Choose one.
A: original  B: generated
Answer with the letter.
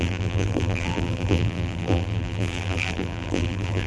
B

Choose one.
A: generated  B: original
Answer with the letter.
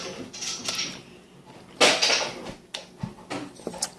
B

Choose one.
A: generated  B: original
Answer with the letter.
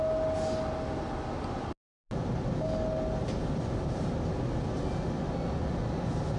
B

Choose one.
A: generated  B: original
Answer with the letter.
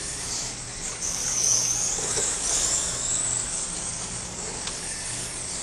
A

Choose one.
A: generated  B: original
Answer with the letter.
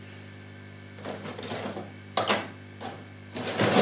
B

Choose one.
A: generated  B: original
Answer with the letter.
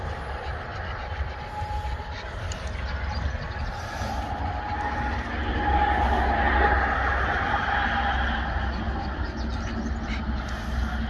B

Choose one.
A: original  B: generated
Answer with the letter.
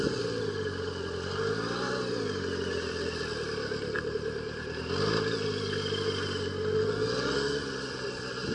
A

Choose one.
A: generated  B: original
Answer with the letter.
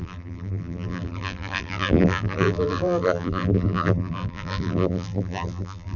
A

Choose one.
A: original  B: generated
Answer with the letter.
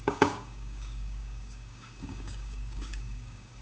B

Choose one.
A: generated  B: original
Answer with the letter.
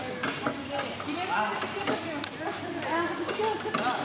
B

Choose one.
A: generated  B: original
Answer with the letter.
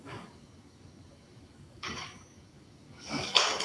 A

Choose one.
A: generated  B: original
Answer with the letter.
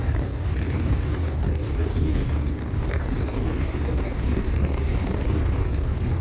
A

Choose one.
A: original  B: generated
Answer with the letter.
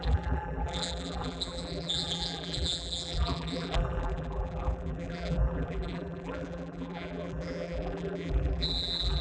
B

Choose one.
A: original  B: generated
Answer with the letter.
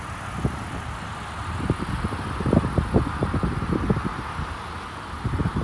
A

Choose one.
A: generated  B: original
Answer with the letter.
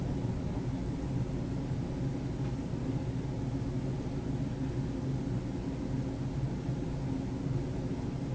B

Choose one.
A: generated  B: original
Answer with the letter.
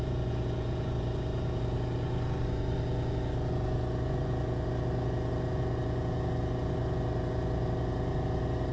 A